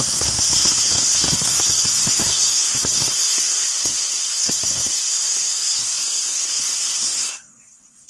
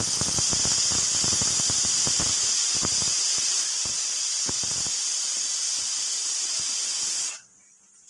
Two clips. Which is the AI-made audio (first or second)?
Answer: first